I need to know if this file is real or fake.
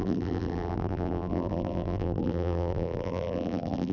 fake